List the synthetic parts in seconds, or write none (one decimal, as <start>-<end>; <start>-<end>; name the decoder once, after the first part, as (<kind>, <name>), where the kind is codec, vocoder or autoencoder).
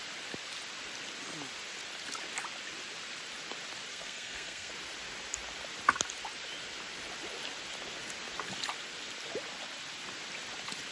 3.9-4.7 (codec, SNAC)